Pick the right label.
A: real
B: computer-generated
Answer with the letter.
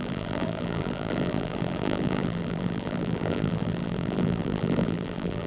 B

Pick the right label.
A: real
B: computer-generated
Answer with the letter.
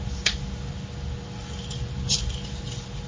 A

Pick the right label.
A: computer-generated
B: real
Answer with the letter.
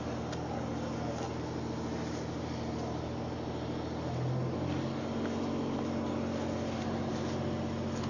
B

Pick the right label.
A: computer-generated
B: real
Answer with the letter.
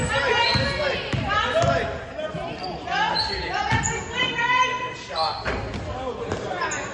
B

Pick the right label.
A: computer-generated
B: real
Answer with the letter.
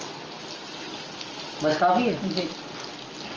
B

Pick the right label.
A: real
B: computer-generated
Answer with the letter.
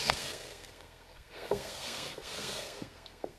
B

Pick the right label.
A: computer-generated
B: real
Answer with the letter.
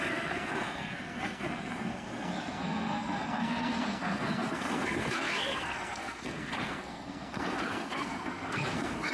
A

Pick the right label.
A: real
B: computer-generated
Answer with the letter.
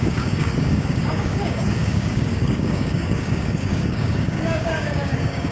B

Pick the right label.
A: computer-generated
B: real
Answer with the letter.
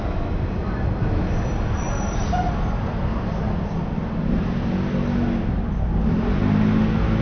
B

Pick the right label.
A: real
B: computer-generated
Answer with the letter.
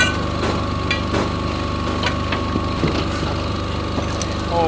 A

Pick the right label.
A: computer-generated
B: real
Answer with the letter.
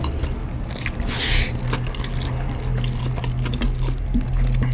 B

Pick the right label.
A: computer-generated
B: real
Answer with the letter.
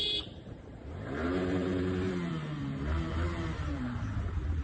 A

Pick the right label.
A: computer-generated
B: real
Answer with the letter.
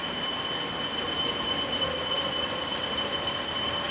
A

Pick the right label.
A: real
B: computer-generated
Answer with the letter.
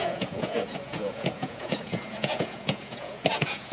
B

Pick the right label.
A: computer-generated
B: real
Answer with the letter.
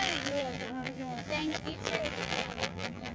A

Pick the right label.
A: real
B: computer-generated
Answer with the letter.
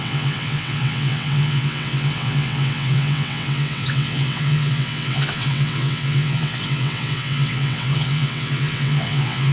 B